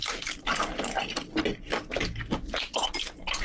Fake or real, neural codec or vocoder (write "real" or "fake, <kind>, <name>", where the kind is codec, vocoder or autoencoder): real